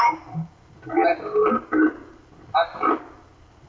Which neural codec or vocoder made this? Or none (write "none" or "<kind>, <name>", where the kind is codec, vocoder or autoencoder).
none